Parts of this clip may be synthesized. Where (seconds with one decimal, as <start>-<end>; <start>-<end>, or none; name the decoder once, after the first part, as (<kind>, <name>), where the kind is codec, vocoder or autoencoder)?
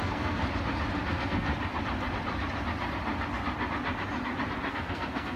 0.0-0.4 (codec, SNAC); 1.1-1.5; 4.7-5.4